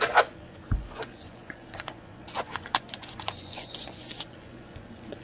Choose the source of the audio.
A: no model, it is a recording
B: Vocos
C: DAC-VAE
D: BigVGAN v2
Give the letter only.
B